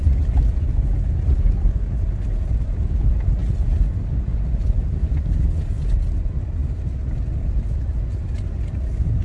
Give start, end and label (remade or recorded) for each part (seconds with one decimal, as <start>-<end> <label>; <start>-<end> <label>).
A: 0.0-9.2 recorded